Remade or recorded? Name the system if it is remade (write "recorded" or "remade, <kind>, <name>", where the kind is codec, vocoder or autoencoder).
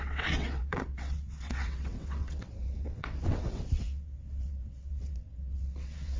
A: remade, vocoder, WaveNeXt